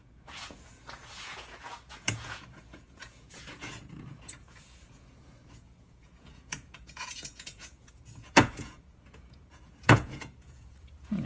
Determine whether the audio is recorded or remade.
remade